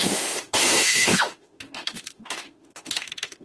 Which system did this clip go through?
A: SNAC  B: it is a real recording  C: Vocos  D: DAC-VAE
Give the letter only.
D